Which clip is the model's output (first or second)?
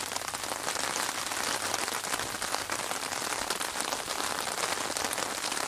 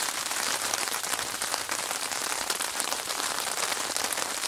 second